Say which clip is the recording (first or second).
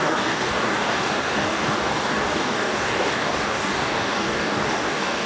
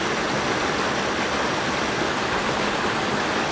second